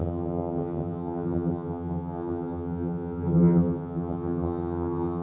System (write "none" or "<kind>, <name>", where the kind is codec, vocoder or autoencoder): vocoder, HiFi-GAN